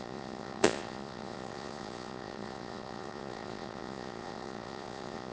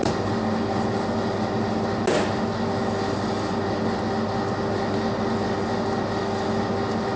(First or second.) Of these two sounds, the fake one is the first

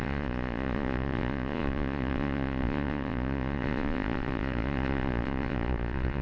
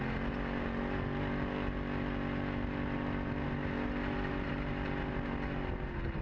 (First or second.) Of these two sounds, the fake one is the first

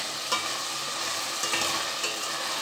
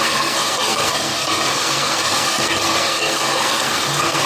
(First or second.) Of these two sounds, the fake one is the second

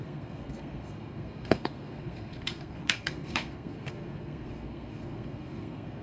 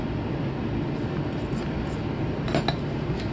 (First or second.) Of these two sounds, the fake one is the first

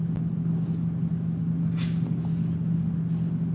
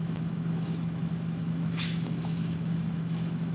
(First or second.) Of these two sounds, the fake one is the second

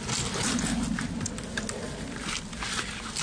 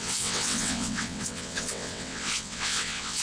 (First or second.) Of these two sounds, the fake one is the second